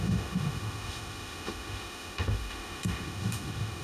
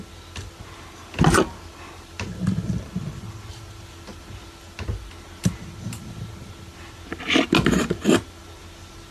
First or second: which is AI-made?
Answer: first